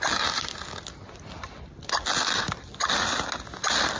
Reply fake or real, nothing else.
real